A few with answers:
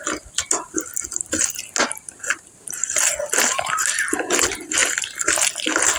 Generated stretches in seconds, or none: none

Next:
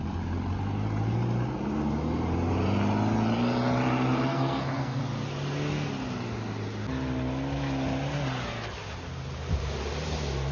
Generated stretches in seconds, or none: 4.3-5.0 (codec, SNAC)

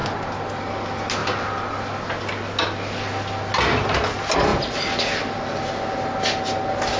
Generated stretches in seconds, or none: none

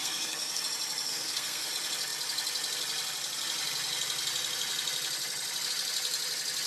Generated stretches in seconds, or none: 0.0-0.6 (codec, SNAC); 1.1-1.7

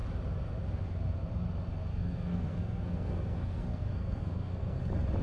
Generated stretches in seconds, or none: 1.9-4.8 (codec, SNAC)